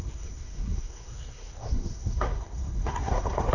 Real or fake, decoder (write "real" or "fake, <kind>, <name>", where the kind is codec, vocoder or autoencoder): fake, codec, SNAC